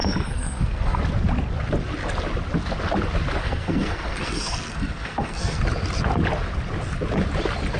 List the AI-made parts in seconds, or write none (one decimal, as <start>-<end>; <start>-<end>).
0.0-1.0; 3.4-5.6